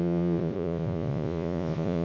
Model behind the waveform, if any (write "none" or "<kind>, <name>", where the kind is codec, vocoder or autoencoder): vocoder, Vocos